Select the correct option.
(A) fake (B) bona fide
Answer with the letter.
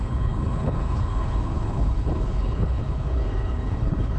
A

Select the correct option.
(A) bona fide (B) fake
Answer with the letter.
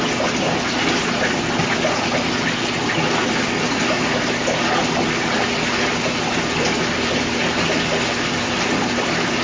A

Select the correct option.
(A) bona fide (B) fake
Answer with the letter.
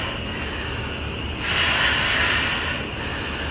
A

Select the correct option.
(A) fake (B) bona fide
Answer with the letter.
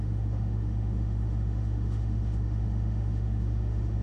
A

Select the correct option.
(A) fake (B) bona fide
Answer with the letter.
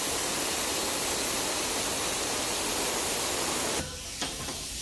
B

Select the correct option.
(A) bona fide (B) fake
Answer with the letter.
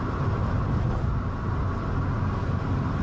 A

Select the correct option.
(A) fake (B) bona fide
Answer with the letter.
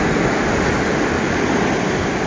B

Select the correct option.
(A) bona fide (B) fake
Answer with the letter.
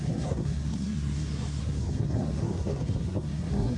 B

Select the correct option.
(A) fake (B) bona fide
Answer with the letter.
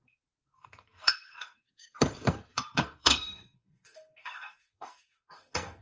A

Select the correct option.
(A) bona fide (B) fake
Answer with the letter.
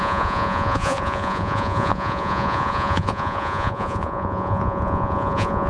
B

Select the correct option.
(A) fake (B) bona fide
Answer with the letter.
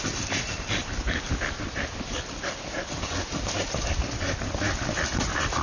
B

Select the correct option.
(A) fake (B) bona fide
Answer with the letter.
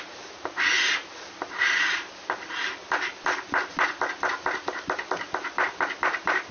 B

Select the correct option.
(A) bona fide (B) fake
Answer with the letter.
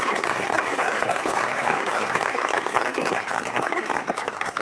B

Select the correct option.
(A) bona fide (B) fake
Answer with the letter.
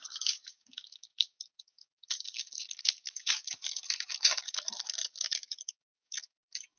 B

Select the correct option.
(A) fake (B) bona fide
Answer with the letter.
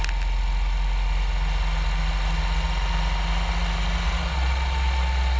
B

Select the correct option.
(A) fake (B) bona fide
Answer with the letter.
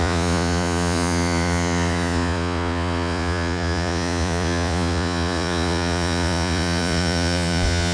A